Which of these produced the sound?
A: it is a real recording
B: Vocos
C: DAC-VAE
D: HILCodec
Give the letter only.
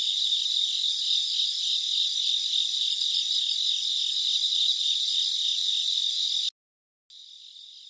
A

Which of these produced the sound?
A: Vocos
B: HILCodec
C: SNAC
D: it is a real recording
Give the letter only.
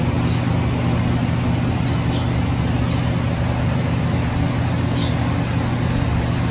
D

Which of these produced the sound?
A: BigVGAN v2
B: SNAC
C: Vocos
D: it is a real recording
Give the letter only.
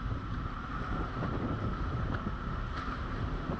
A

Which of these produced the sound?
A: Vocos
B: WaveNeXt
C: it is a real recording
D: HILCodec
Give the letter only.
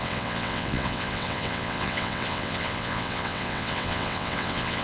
B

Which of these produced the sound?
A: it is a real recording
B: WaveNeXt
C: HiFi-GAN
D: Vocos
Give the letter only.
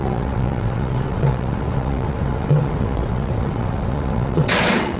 B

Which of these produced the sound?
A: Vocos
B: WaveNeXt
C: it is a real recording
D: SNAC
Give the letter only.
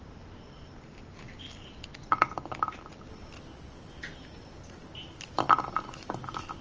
C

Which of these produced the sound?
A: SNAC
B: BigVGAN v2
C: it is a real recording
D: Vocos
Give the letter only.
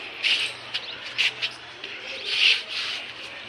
C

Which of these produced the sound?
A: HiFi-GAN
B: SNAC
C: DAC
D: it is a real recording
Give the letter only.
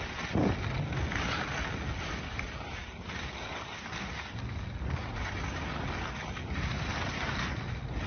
D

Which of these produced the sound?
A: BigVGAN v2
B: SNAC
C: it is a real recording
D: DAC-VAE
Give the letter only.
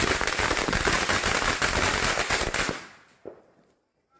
C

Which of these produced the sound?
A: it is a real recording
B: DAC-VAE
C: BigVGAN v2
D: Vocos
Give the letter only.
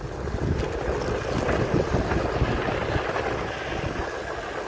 A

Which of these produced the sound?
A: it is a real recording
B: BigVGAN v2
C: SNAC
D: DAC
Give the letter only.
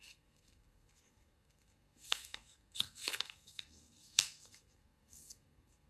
C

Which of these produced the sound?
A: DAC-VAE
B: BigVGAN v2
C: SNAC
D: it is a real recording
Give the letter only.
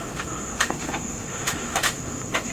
A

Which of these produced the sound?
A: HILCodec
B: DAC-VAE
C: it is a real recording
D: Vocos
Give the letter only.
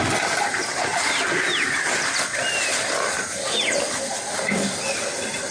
C